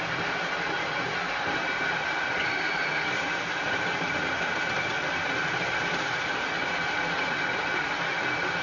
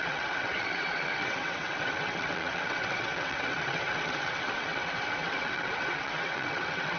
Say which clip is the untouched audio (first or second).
first